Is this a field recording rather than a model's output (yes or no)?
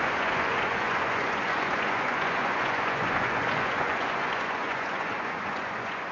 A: no